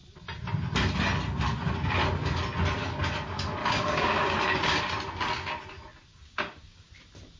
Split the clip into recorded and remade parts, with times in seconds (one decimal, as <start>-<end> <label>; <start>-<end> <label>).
0.0-3.6 recorded; 3.6-4.3 remade; 4.3-6.1 recorded; 6.1-6.9 remade; 6.9-7.4 recorded

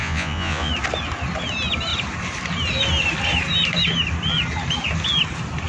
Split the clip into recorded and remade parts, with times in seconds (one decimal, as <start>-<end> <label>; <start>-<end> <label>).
0.0-0.7 remade; 0.7-5.7 recorded

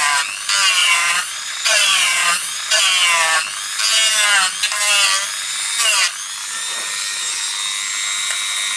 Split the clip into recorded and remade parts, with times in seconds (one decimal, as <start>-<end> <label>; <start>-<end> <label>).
0.0-0.8 recorded; 0.8-2.8 remade; 2.8-8.8 recorded

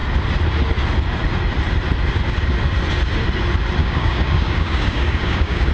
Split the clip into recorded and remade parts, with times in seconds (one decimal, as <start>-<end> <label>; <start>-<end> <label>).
0.0-3.8 recorded; 3.8-5.7 remade

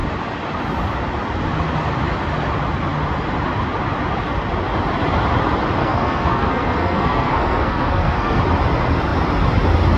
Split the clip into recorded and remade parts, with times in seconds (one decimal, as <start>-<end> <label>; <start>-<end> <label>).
0.0-5.8 recorded; 5.8-8.4 remade; 8.4-10.0 recorded

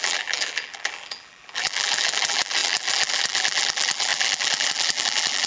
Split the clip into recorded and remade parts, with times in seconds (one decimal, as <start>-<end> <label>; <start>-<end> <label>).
0.0-5.5 remade

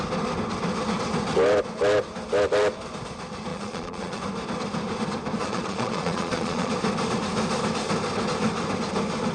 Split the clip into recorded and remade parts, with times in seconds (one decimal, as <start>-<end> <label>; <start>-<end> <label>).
0.0-3.5 recorded; 3.5-4.2 remade; 4.2-5.4 recorded; 5.4-6.7 remade; 6.7-9.3 recorded

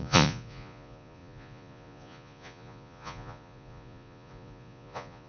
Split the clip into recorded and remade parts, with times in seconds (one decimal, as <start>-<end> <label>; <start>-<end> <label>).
0.0-5.3 remade